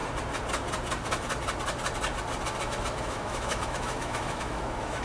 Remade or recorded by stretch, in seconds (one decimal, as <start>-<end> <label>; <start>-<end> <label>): 0.0-3.0 recorded; 3.0-5.0 remade